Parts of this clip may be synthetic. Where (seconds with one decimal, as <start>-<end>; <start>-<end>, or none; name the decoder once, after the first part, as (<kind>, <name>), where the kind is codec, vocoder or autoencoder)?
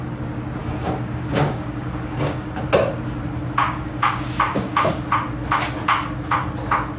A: 0.6-2.6 (codec, DAC); 3.6-4.9